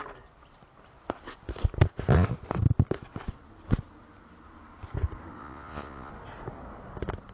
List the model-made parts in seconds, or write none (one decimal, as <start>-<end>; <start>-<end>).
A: 5.4-6.1